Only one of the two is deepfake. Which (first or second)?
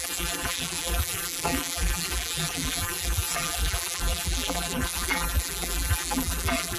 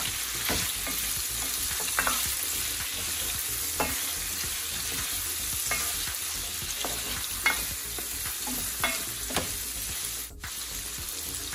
first